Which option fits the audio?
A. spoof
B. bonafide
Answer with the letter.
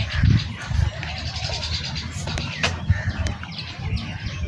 A